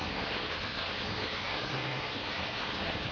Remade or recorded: remade